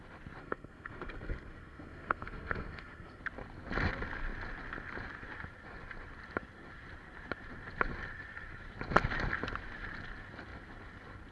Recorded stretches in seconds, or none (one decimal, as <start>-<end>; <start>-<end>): 0.0-0.4; 3.2-11.3